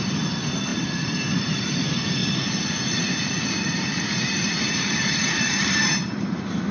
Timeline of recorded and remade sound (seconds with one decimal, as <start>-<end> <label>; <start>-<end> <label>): 0.0-2.2 remade; 2.2-3.0 recorded; 3.0-6.7 remade